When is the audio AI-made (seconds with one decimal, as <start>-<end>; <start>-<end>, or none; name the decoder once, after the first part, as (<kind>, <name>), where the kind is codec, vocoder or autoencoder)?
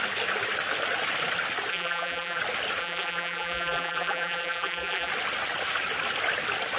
1.7-2.4 (vocoder, BigVGAN v2); 2.8-5.1